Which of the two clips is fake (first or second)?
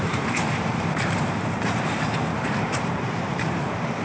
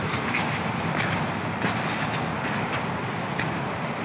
first